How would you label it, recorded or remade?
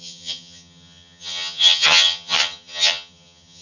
remade